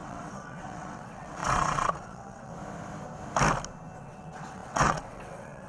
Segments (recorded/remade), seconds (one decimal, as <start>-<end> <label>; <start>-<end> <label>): 0.0-2.5 remade; 2.5-4.0 recorded; 4.0-5.7 remade